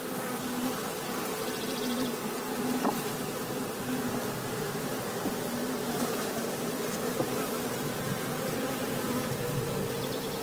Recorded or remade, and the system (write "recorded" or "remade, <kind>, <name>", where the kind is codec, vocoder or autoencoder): remade, vocoder, BigVGAN v2